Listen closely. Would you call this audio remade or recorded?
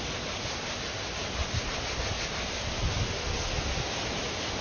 recorded